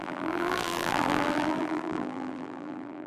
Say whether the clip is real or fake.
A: fake